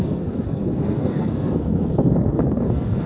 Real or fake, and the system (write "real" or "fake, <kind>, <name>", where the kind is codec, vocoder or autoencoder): fake, codec, SNAC